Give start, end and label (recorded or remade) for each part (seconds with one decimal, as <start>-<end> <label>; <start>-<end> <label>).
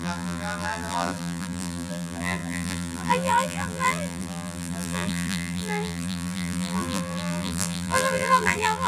0.0-8.9 remade